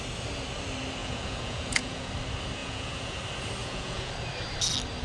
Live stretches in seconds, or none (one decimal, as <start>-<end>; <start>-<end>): 0.0-1.0; 2.1-2.6; 3.2-3.6; 4.1-5.0